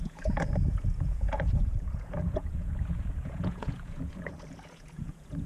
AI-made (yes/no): yes